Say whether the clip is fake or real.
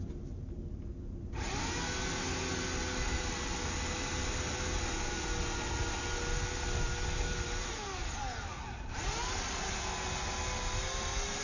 real